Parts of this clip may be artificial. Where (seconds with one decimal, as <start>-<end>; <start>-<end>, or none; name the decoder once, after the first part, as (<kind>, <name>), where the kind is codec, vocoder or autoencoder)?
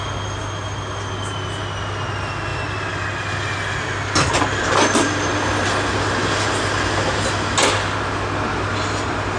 none